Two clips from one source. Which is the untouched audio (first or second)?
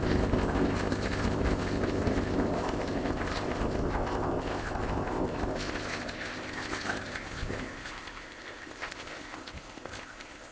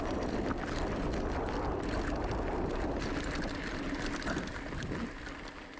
second